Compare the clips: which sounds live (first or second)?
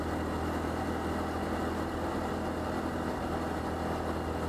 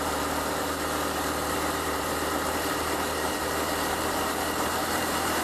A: first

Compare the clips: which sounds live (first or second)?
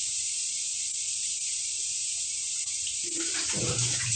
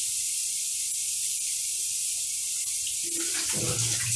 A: second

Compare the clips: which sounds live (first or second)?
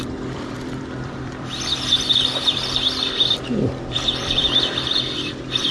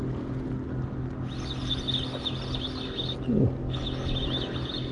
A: second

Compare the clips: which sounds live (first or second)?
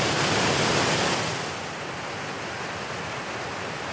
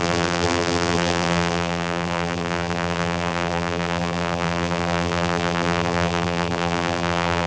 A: first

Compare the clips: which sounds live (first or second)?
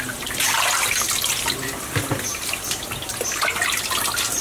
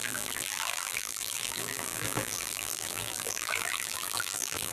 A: first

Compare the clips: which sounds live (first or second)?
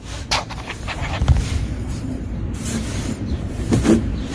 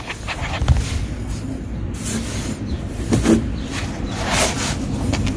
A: second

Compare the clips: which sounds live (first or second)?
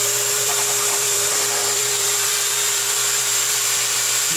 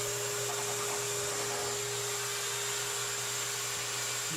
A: second